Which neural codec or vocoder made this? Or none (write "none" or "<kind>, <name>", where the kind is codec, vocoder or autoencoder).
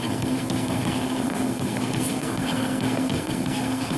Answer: codec, SNAC